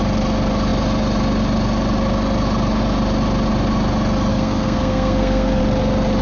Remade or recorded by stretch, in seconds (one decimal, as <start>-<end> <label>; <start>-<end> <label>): 0.0-4.3 recorded; 4.3-5.6 remade; 5.6-6.2 recorded